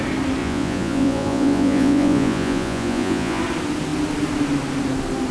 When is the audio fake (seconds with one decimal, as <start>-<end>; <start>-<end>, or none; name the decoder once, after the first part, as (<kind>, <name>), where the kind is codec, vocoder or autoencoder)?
0.4-3.4 (vocoder, Vocos)